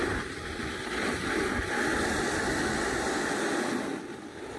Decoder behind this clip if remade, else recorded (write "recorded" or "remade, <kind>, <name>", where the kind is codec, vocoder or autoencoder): recorded